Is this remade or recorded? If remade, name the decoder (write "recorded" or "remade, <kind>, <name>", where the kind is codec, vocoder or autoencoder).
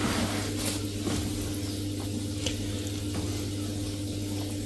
recorded